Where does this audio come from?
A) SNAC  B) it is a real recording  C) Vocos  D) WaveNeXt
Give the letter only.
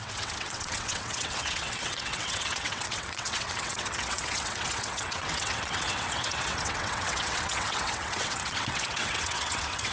D